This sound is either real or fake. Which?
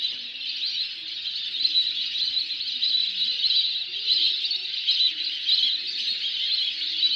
real